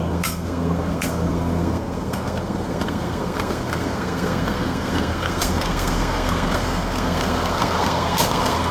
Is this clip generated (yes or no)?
yes